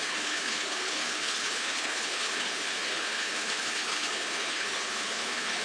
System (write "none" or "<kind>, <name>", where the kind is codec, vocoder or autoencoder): codec, HILCodec